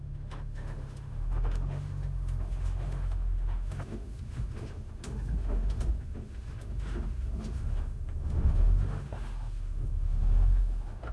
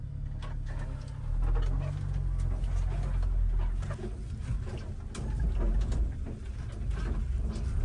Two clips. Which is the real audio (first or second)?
second